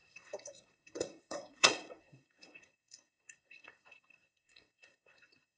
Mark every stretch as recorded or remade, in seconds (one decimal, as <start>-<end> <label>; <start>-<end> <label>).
0.0-5.6 remade